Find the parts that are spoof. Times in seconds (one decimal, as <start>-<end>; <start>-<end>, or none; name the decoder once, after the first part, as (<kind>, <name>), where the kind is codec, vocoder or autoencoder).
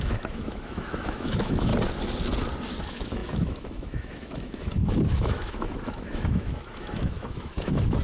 0.0-1.7 (autoencoder, DAC-VAE); 2.8-8.0